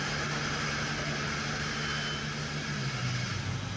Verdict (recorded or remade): recorded